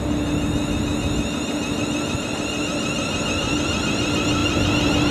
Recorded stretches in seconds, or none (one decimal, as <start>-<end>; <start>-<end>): 0.0-5.1

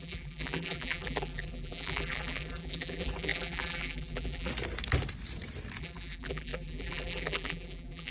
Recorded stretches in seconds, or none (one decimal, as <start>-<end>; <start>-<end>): 4.5-5.8

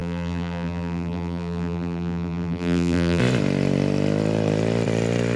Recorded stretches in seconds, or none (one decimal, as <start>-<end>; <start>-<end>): 3.2-5.4